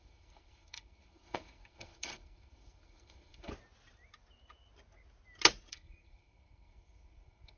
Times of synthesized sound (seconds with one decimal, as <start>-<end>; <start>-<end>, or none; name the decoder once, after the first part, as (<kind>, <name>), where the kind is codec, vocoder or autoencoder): 0.0-3.5 (codec, SNAC); 5.7-7.6

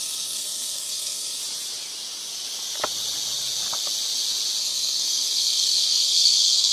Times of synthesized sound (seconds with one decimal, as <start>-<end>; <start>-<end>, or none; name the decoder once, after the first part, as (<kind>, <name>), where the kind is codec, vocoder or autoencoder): 0.0-1.4 (codec, SNAC); 4.6-6.7

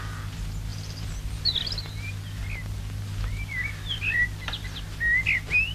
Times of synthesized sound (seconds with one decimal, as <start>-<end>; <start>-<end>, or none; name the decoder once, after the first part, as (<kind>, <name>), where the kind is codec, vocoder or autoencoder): none

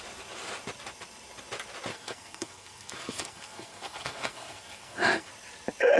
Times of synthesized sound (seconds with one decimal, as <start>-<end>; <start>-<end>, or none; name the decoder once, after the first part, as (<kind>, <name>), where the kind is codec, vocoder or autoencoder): 1.9-5.3 (codec, SNAC)